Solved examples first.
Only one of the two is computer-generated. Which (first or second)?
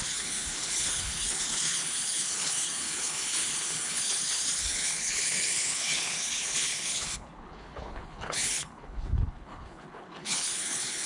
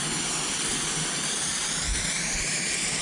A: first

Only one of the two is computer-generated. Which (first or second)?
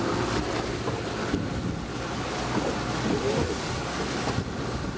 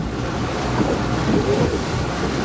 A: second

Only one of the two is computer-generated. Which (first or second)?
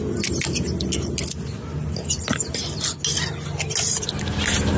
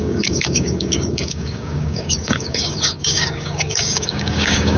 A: second